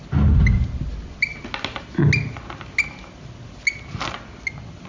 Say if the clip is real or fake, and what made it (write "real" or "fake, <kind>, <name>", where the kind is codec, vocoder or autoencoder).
real